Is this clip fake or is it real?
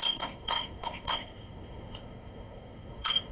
fake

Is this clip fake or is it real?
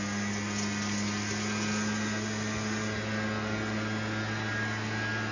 real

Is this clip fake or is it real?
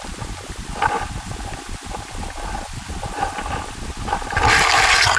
real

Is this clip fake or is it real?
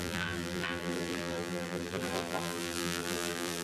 fake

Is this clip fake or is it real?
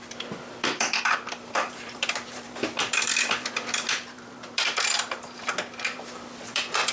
fake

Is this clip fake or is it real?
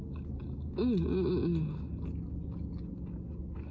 real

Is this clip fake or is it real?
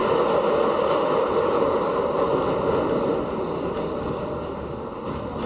real